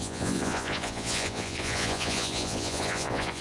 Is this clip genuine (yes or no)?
no